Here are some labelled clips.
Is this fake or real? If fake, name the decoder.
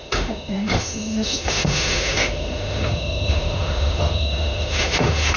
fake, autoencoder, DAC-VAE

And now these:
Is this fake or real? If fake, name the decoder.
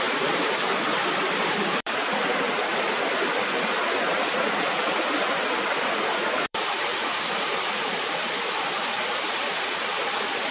fake, vocoder, BigVGAN v2